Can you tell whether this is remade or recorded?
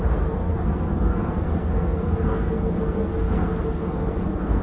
remade